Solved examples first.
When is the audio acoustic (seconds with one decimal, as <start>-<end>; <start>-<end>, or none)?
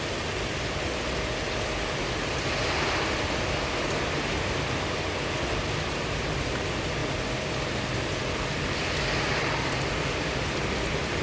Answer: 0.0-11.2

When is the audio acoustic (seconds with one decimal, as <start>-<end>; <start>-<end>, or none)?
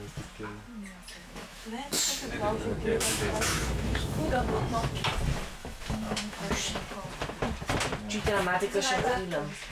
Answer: 0.0-1.2; 2.0-2.9; 4.6-5.6; 6.8-9.7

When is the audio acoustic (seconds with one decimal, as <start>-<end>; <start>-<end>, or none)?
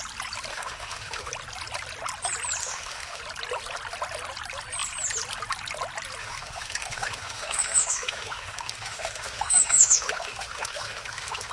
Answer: 0.0-0.5; 1.3-2.6; 3.2-6.2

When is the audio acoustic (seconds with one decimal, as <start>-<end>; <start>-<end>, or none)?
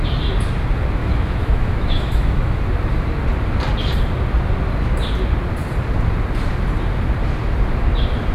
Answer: 0.0-1.0; 2.6-8.3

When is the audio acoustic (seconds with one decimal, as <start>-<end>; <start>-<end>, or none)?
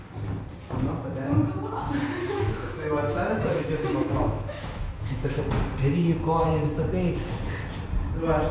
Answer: 0.0-2.2; 5.4-8.5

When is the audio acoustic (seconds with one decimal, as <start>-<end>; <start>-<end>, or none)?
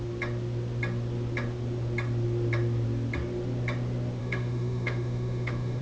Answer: 0.0-4.2